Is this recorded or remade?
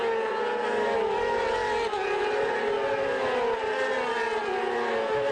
recorded